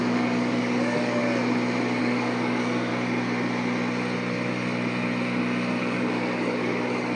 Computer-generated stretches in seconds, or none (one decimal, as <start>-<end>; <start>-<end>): 0.0-1.2; 2.0-2.9; 5.8-7.2